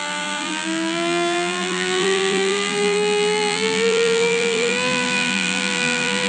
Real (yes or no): no